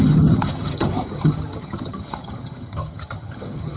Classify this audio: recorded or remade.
remade